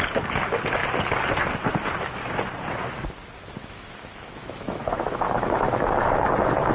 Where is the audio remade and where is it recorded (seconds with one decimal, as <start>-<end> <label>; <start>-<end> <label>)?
0.0-3.6 recorded; 3.6-6.1 remade; 6.1-6.7 recorded

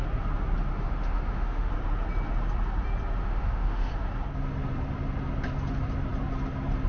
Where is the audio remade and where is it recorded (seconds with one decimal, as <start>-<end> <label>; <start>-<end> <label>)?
0.0-0.7 recorded; 0.7-1.7 remade; 1.7-3.2 recorded; 3.2-3.9 remade; 3.9-6.9 recorded

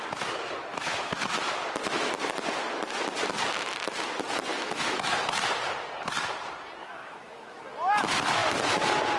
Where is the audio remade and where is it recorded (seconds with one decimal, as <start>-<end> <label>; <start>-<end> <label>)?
0.0-0.7 recorded; 0.7-1.5 remade; 1.5-4.5 recorded; 4.5-5.1 remade; 5.1-6.8 recorded; 6.8-7.6 remade; 7.6-9.2 recorded

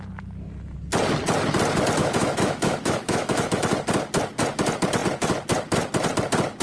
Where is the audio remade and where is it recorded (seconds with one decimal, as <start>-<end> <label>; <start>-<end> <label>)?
0.0-2.0 recorded; 2.0-3.7 remade; 3.7-6.6 recorded

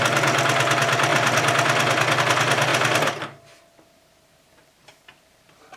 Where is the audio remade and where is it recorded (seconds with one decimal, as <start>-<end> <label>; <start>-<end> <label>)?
0.0-5.8 recorded

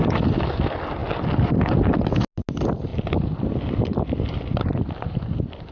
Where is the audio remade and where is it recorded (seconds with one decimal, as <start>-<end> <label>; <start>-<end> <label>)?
0.0-5.7 recorded